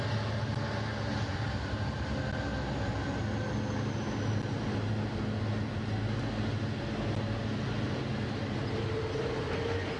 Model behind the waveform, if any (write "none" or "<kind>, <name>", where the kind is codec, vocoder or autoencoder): none